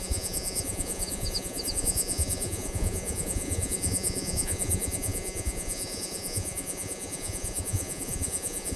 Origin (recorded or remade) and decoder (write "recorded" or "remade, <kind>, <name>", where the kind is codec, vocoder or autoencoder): remade, vocoder, Vocos